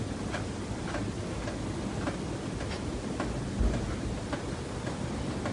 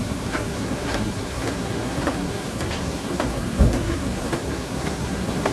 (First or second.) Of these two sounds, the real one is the first